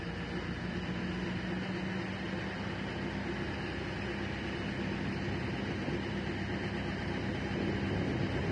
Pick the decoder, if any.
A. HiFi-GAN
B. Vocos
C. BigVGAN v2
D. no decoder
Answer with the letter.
D